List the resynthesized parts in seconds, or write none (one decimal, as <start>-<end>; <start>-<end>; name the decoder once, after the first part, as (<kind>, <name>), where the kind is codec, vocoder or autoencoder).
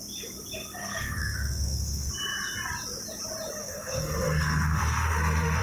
0.8-2.1 (codec, SNAC); 3.6-5.6